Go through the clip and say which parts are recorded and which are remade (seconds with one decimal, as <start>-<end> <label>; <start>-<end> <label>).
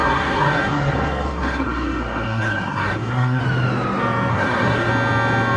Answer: 0.0-3.4 remade; 3.4-4.3 recorded; 4.3-4.9 remade; 4.9-5.6 recorded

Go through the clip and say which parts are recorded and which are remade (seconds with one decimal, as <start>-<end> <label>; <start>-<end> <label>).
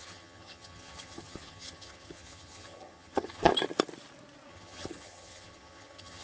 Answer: 0.0-3.5 remade; 3.5-4.5 recorded; 4.5-6.2 remade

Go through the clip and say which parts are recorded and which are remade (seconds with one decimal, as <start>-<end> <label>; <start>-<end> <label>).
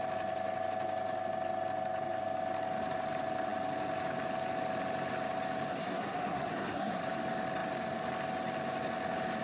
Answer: 0.0-5.7 recorded; 5.7-7.0 remade; 7.0-9.4 recorded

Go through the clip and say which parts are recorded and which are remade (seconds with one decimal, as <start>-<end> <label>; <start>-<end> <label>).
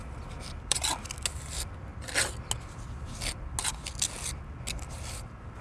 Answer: 0.0-0.8 remade; 0.8-5.6 recorded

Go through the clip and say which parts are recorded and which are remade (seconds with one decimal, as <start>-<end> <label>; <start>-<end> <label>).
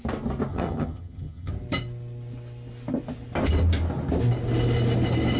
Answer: 0.0-0.5 recorded; 0.5-1.5 remade; 1.5-5.4 recorded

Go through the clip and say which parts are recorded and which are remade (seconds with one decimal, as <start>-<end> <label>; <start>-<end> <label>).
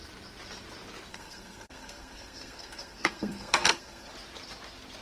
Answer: 0.0-1.1 recorded; 1.1-4.1 remade; 4.1-5.0 recorded